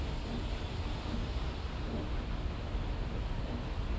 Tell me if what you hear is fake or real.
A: real